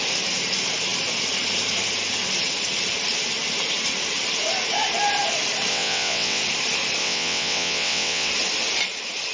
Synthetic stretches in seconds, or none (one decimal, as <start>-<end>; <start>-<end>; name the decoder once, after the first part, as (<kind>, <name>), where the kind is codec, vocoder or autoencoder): 5.7-6.4 (vocoder, WaveNeXt); 7.0-8.3

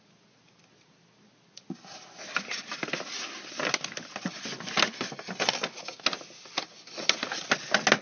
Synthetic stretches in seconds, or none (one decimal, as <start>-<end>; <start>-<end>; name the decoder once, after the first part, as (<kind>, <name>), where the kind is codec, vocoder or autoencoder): none

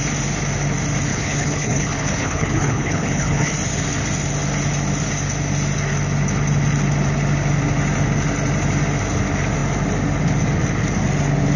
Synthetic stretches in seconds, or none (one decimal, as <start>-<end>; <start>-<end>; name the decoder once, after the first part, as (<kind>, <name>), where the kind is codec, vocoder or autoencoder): 1.1-3.5 (codec, HILCodec)